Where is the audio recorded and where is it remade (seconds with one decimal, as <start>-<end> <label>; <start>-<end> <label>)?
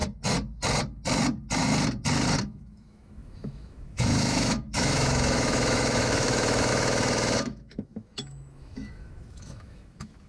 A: 0.0-2.4 recorded; 2.4-10.3 remade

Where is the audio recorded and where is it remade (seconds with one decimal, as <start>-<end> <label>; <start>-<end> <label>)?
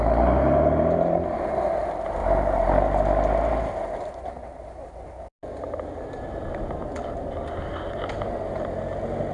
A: 0.0-9.3 recorded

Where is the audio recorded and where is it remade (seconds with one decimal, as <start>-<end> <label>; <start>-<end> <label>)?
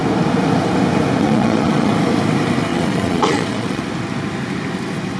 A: 0.0-1.2 recorded; 1.2-1.9 remade; 1.9-2.7 recorded; 2.7-3.8 remade; 3.8-5.2 recorded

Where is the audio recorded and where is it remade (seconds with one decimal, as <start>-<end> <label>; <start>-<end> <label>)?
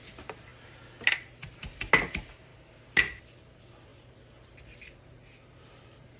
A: 0.0-6.2 recorded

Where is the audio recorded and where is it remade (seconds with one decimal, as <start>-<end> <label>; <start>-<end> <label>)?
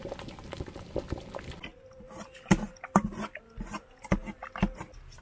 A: 0.0-1.7 recorded; 1.7-3.2 remade; 3.2-5.2 recorded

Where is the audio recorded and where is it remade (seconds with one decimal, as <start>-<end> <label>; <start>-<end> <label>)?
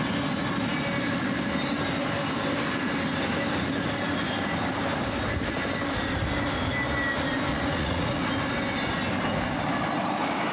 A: 0.0-7.5 recorded; 7.5-8.3 remade; 8.3-10.5 recorded